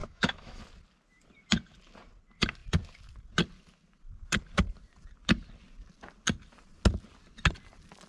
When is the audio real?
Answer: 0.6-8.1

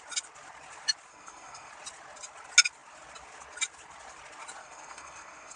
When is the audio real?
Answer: 0.0-1.1; 1.7-4.6